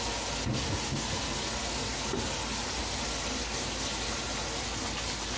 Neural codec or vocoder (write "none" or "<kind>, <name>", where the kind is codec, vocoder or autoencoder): none